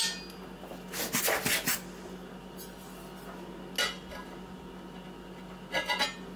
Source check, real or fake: real